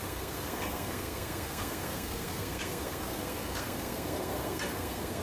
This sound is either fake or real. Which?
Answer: fake